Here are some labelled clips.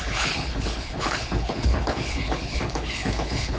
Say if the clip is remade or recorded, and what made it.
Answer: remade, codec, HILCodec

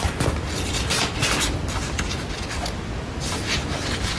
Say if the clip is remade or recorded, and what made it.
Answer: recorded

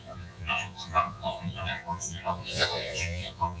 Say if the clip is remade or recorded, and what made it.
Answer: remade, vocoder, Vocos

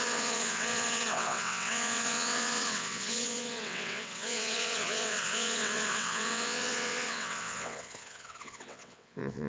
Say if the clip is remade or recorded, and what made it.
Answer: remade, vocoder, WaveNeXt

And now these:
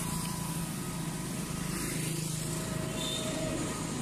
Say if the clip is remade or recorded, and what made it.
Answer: recorded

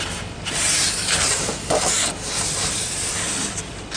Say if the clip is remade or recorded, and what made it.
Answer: recorded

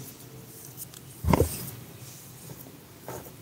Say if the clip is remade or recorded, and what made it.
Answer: recorded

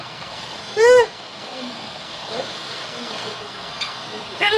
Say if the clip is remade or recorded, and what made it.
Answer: remade, codec, SNAC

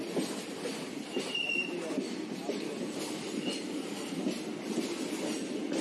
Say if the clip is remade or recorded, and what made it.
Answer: recorded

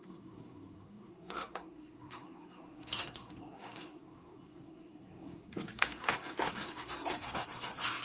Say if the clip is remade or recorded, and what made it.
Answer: remade, codec, SNAC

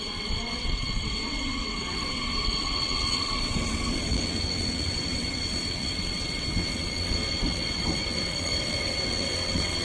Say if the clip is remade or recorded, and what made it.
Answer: remade, vocoder, WaveNeXt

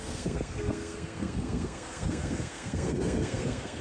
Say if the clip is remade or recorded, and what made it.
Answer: remade, codec, SNAC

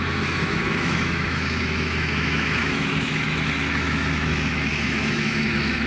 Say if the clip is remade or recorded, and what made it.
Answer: remade, autoencoder, DAC-VAE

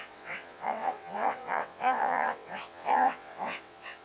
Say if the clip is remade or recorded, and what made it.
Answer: remade, vocoder, WaveNeXt